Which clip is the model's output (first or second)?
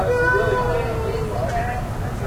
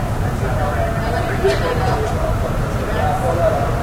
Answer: second